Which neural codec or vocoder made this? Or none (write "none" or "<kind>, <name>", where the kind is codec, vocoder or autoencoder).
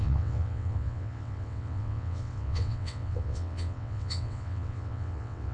vocoder, WaveNeXt